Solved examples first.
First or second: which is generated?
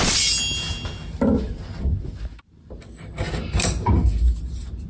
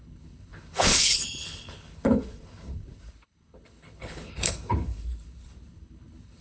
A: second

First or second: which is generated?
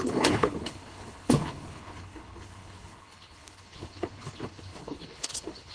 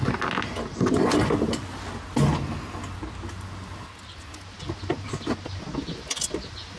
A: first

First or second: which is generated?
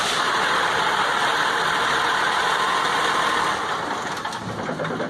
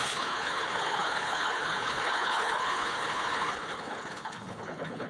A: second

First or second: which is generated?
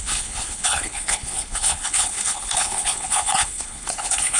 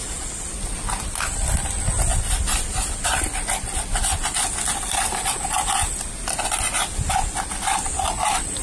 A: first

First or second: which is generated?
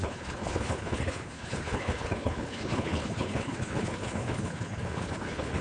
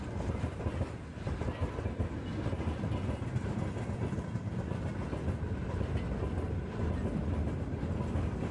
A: first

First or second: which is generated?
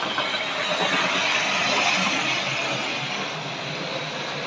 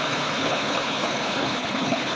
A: second